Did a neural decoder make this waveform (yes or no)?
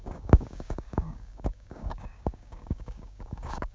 yes